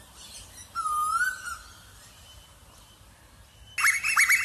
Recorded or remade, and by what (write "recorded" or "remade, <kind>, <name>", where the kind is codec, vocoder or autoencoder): recorded